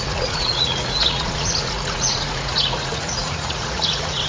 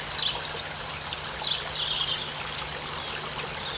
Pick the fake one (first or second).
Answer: first